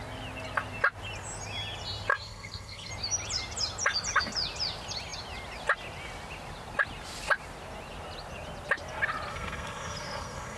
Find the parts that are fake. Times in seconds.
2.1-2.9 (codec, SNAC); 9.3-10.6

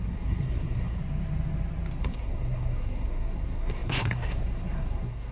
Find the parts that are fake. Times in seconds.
0.0-1.0 (codec, SNAC); 2.0-5.3

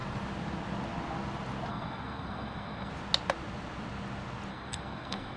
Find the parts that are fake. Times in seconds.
1.7-2.9 (codec, SNAC); 4.5-5.4

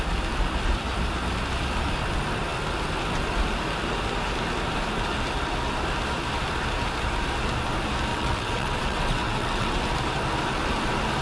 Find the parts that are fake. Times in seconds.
8.1-9.8 (vocoder, WaveNeXt)

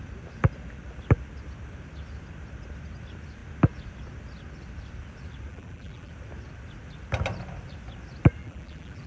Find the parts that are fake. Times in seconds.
5.5-6.1 (vocoder, BigVGAN v2); 8.4-9.1